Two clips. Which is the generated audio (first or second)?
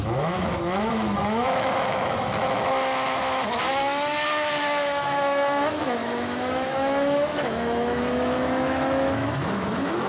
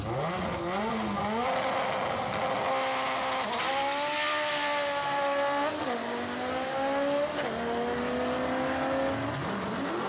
first